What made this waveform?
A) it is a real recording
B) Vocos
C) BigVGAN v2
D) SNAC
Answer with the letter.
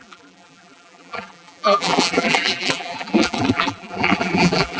C